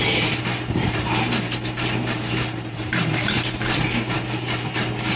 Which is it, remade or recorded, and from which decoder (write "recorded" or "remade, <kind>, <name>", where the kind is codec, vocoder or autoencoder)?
remade, vocoder, BigVGAN v2